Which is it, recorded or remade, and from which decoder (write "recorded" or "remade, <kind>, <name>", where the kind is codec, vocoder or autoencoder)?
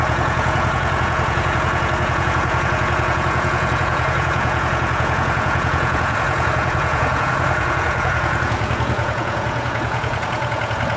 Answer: remade, vocoder, Vocos